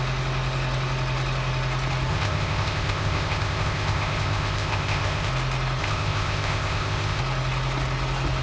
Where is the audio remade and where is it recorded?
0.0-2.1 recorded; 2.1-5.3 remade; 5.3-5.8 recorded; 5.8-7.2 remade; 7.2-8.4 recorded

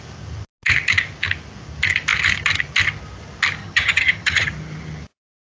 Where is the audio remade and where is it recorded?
0.0-3.6 recorded; 3.6-4.5 remade; 4.5-5.6 recorded

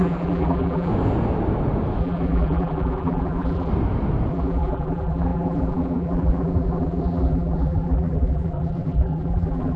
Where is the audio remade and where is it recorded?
0.0-0.9 remade; 0.9-2.0 recorded; 2.0-3.7 remade; 3.7-4.3 recorded; 4.3-9.8 remade

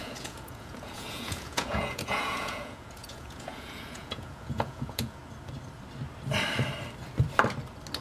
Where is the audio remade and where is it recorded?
0.0-5.2 remade; 5.2-8.0 recorded

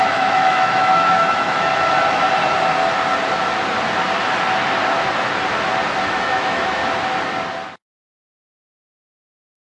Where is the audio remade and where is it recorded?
0.0-1.7 remade; 1.7-6.0 recorded; 6.0-6.8 remade; 6.8-7.8 recorded; 7.8-9.6 remade

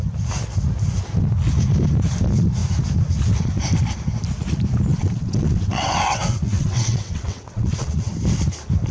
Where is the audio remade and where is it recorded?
0.0-4.9 recorded; 4.9-8.1 remade; 8.1-8.9 recorded

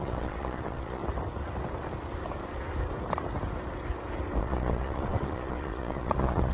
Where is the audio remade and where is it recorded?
0.0-1.0 remade; 1.0-4.4 recorded; 4.4-6.5 remade

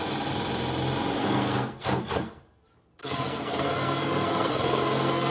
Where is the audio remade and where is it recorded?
0.0-1.2 recorded; 1.2-2.4 remade; 2.4-3.0 recorded; 3.0-5.3 remade